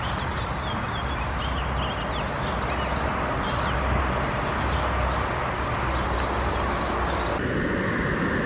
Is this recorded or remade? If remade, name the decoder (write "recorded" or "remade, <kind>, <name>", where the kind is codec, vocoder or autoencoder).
recorded